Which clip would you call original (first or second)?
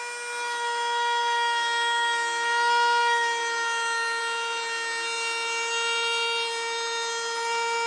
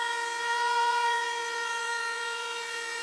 first